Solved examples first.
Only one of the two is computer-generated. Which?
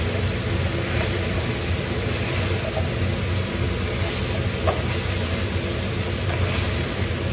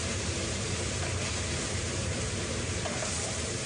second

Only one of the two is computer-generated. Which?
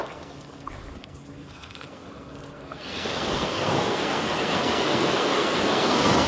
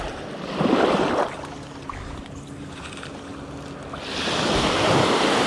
first